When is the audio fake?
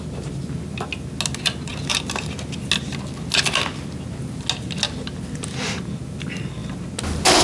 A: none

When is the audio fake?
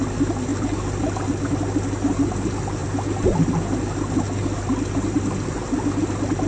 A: none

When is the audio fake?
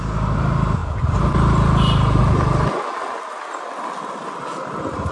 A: none